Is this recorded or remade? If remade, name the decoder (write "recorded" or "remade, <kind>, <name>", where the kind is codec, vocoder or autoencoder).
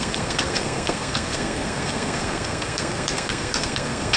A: remade, codec, SNAC